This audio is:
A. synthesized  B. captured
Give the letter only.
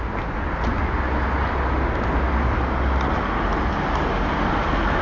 B